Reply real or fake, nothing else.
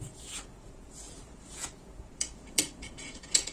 fake